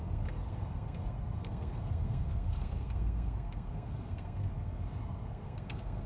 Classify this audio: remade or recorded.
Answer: remade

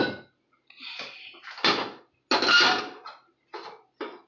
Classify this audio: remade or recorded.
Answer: recorded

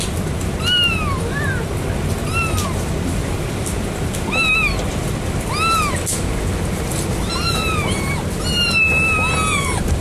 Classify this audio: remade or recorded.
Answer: recorded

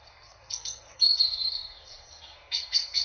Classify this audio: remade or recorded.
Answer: remade